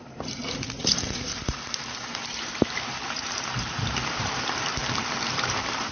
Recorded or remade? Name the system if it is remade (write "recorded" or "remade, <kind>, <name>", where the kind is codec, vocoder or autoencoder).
remade, vocoder, BigVGAN v2